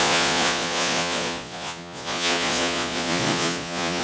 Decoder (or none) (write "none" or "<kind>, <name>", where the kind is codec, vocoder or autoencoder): vocoder, Vocos